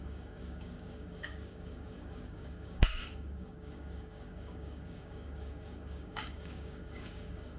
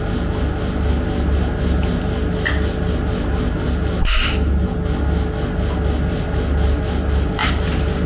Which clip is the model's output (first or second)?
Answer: first